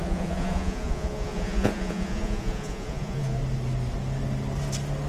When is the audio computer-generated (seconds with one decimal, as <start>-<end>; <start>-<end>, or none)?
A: 0.0-3.4